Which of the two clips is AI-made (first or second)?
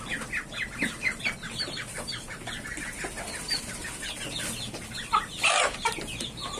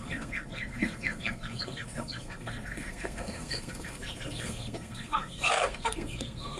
second